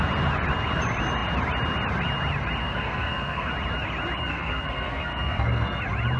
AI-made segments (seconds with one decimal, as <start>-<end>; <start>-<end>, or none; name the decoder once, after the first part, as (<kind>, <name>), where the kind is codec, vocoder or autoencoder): 2.6-3.5 (codec, SNAC); 4.2-5.8